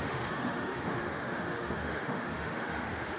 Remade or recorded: remade